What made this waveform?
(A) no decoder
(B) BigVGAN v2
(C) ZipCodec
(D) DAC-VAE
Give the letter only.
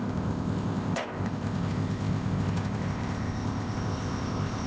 C